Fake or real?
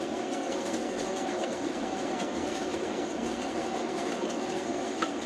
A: fake